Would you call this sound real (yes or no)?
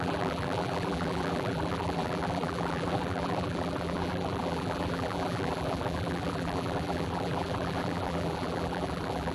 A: no